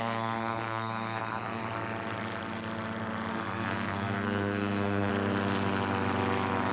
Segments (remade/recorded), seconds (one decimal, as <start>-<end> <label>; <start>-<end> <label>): 0.0-1.6 remade; 1.6-3.3 recorded; 3.3-5.1 remade; 5.1-6.7 recorded